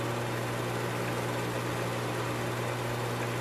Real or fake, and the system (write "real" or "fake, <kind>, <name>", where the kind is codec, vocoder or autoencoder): real